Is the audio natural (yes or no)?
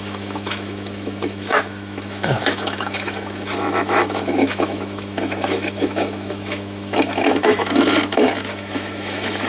no